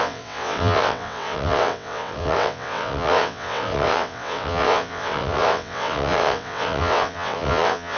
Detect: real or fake fake